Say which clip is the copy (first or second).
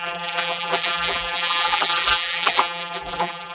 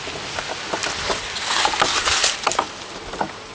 first